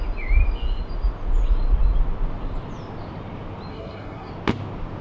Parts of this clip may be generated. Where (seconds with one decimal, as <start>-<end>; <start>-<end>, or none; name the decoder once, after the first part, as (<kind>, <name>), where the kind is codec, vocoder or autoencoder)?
3.7-4.3 (codec, SNAC)